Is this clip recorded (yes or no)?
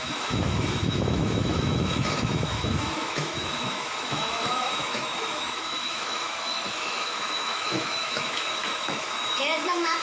no